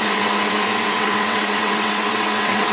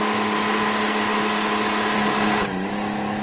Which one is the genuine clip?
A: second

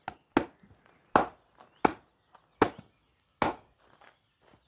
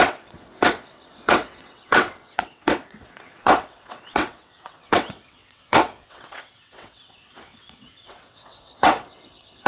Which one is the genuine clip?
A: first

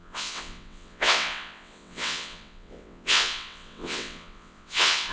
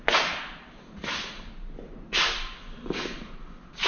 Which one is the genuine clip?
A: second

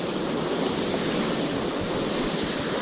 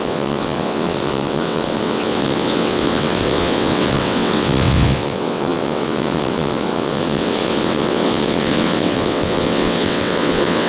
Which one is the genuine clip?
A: first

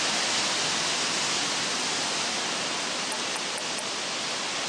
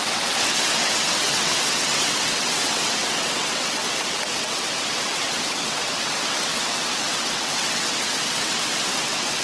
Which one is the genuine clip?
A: first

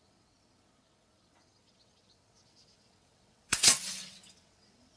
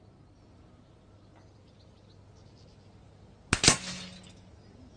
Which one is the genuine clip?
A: second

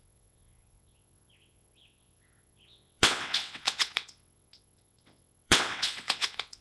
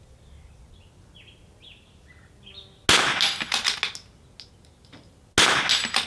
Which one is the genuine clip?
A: second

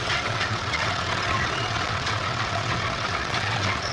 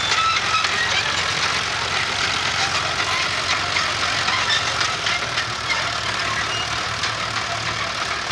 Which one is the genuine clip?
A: second